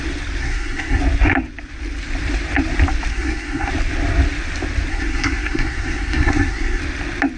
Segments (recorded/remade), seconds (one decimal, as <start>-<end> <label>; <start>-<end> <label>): 0.0-0.4 recorded; 0.4-1.0 remade; 1.0-3.1 recorded; 3.1-3.7 remade; 3.7-4.9 recorded; 4.9-6.8 remade; 6.8-7.4 recorded